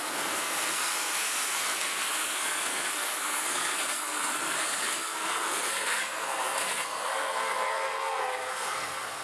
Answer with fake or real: fake